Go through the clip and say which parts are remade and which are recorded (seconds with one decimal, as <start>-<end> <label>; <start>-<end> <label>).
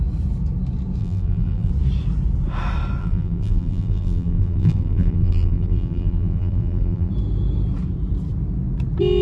0.0-1.0 recorded; 1.0-1.7 remade; 1.7-3.0 recorded; 3.0-7.1 remade; 7.1-9.2 recorded